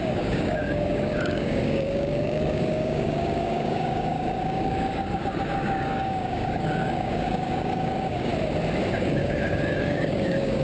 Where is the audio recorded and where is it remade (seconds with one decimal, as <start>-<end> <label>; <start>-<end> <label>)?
0.0-8.3 remade; 8.3-8.9 recorded; 8.9-10.6 remade